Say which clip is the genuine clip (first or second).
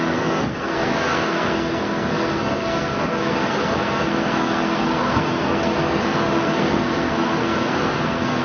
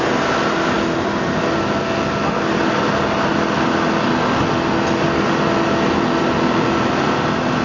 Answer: second